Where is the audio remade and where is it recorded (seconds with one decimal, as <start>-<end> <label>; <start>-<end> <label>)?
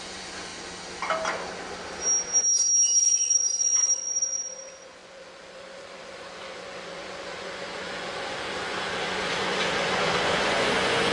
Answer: 0.0-0.5 remade; 0.5-3.0 recorded; 3.0-11.1 remade